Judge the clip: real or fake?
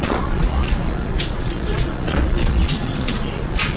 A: fake